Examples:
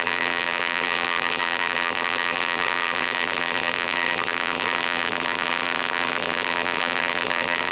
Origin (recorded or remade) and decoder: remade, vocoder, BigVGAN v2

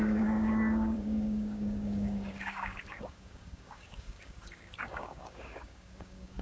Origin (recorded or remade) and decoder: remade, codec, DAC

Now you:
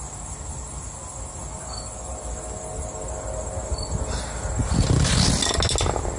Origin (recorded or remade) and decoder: recorded